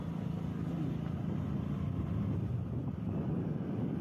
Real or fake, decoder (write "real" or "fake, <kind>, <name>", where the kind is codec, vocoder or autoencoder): real